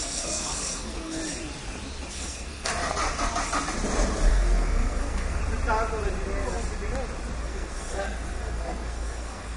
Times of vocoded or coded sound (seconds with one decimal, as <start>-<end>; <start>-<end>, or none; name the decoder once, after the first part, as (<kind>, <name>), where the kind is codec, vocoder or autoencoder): 0.0-1.2 (codec, SNAC); 2.1-2.7; 4.3-5.4; 7.4-9.6